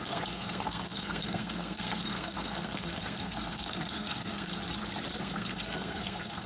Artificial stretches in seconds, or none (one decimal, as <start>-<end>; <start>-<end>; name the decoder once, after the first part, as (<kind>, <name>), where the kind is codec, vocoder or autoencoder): 0.0-4.5 (codec, SNAC); 5.2-6.5